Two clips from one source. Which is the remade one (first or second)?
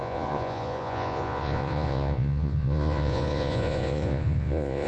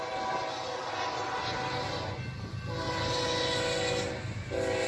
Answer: first